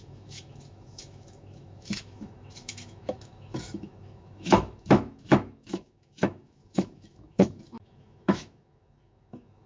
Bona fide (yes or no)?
no